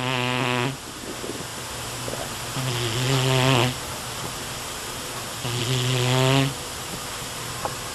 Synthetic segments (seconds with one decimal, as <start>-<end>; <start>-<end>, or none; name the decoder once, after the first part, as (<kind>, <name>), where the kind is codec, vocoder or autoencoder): none